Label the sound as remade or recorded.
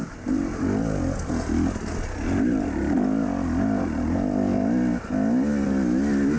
recorded